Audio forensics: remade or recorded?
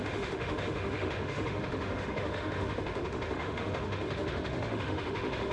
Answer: remade